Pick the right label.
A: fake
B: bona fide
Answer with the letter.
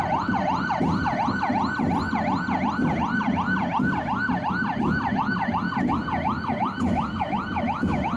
B